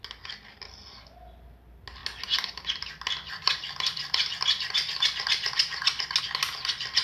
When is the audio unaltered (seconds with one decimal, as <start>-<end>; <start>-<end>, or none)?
0.0-7.0